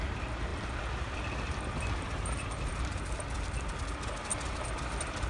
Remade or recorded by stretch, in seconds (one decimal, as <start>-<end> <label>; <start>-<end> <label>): 0.0-5.3 recorded